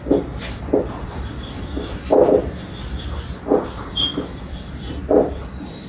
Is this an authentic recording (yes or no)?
no